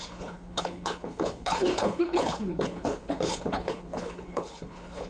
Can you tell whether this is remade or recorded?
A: remade